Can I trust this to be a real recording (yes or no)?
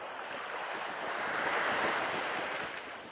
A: yes